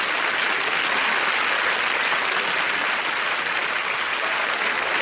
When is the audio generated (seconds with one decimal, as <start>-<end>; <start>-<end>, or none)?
3.8-4.5